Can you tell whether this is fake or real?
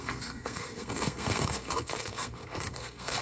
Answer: fake